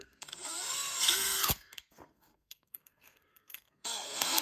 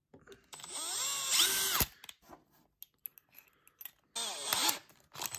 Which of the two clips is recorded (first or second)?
second